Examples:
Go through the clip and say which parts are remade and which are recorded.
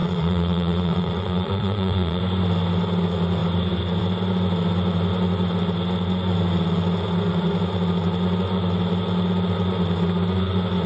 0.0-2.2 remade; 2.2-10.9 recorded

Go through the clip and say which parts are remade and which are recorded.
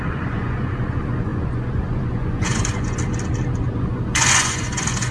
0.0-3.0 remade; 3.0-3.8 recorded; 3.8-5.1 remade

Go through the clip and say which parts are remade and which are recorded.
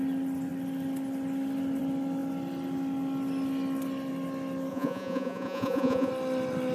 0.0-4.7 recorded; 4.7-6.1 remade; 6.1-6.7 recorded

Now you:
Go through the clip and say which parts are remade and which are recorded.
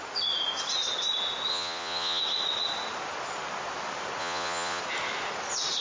0.0-1.5 recorded; 1.5-2.2 remade; 2.2-4.2 recorded; 4.2-4.8 remade; 4.8-5.8 recorded